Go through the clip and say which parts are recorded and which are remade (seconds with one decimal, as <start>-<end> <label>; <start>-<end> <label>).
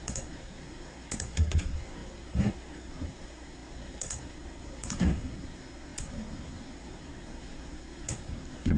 0.0-8.8 remade